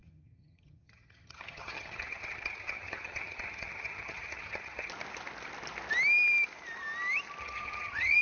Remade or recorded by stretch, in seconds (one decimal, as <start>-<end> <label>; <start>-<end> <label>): 0.0-4.9 remade; 4.9-7.4 recorded; 7.4-8.2 remade